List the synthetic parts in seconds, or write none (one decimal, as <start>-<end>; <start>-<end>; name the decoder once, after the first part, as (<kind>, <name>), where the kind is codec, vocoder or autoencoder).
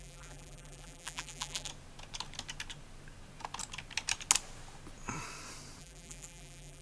0.0-1.7 (vocoder, BigVGAN v2); 5.8-6.8